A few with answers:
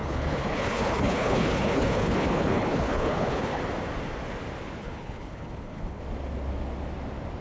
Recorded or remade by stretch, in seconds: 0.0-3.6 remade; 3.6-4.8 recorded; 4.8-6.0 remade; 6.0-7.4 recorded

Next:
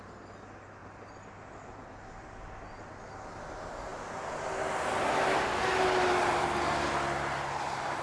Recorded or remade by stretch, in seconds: 0.0-8.0 recorded

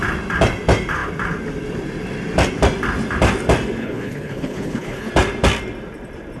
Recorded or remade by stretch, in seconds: 0.0-3.8 recorded; 3.8-5.1 remade; 5.1-6.4 recorded

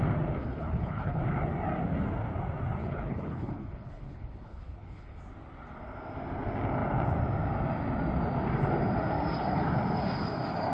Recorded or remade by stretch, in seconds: 0.0-0.4 recorded; 0.4-1.2 remade; 1.2-2.8 recorded; 2.8-5.2 remade; 5.2-10.7 recorded

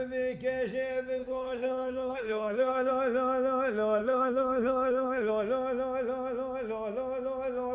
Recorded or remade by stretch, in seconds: 0.0-1.2 recorded; 1.2-2.9 remade; 2.9-4.0 recorded; 4.0-5.3 remade; 5.3-7.7 recorded

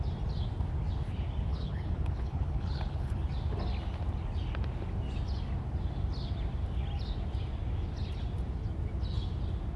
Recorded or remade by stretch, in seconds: 0.0-1.5 recorded; 1.5-3.3 remade; 3.3-9.8 recorded

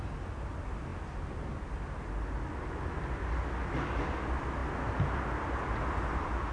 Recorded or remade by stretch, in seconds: 0.0-6.5 recorded

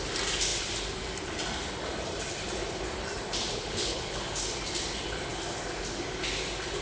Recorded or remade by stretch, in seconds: 0.0-3.5 recorded; 3.5-4.2 remade; 4.2-6.8 recorded